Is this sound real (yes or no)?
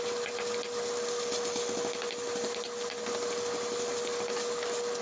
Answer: yes